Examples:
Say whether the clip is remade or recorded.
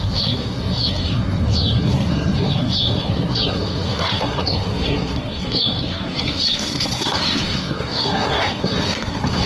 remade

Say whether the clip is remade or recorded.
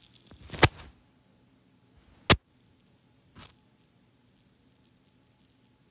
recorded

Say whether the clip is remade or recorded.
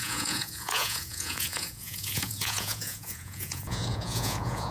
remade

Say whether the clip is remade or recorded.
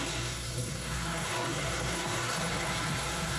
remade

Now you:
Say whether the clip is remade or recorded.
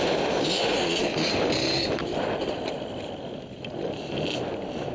recorded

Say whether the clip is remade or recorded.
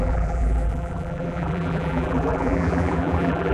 remade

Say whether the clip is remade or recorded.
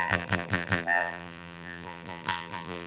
remade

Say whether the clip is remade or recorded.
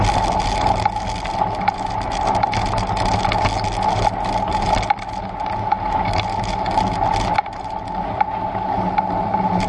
recorded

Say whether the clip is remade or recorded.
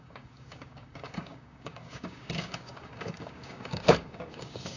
remade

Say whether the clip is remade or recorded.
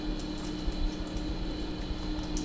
recorded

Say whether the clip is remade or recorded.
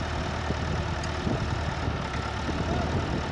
recorded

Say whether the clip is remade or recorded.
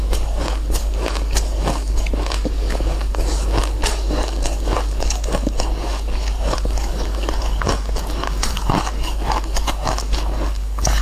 remade